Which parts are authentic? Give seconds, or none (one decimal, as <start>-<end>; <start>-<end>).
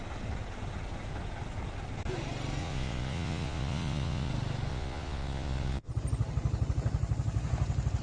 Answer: 0.0-2.6; 4.3-4.7; 5.9-8.0